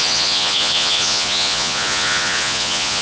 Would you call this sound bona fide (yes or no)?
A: no